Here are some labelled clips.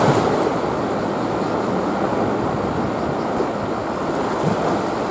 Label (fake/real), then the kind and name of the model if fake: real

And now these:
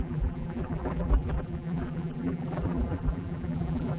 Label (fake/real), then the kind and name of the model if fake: fake, vocoder, BigVGAN v2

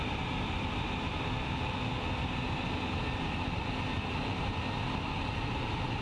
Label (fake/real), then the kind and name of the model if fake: real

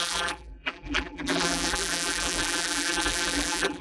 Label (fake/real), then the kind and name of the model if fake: fake, vocoder, BigVGAN v2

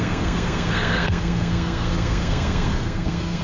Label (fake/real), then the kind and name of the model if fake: fake, codec, SNAC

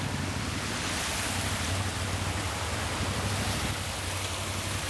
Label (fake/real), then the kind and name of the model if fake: real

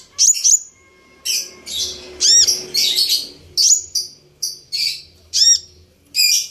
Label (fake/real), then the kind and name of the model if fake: real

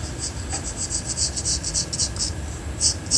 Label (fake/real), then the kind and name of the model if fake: real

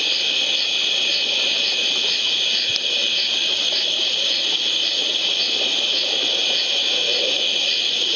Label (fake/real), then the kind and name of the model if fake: real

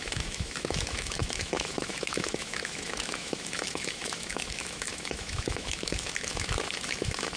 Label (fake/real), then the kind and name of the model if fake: fake, autoencoder, DAC-VAE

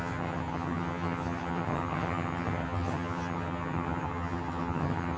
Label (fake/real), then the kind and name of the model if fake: fake, vocoder, HiFi-GAN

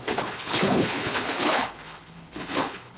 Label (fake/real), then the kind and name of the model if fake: fake, codec, HILCodec